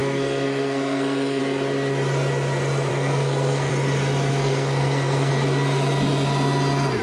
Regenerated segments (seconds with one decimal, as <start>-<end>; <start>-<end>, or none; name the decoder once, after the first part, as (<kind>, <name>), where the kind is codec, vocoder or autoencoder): 0.0-1.4 (codec, SNAC); 2.9-3.7; 4.3-5.3